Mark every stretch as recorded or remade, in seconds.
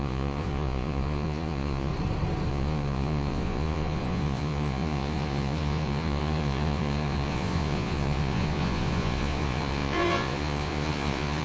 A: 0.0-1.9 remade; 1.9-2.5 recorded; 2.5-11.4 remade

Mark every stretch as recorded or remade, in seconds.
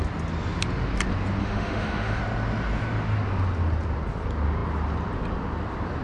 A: 0.0-1.4 recorded; 1.4-2.2 remade; 2.2-6.0 recorded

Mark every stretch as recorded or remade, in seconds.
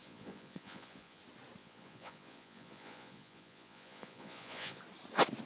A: 0.0-1.2 remade; 1.2-1.6 recorded; 1.6-4.8 remade; 4.8-5.5 recorded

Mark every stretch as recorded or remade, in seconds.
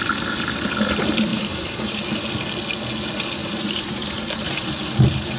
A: 0.0-1.3 recorded; 1.3-2.0 remade; 2.0-3.4 recorded; 3.4-4.9 remade; 4.9-5.4 recorded